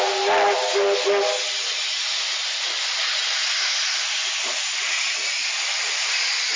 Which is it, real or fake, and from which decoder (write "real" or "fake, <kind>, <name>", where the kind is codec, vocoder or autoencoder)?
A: real